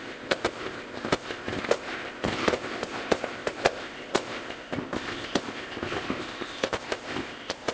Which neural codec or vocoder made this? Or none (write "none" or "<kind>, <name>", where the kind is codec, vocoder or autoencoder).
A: codec, ZipCodec